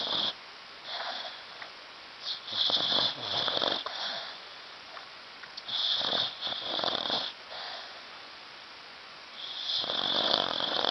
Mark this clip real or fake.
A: fake